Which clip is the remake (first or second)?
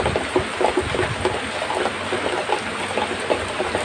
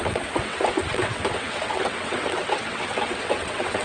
second